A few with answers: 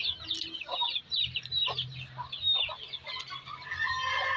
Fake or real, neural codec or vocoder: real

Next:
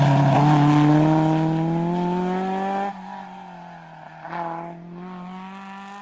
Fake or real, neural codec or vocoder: real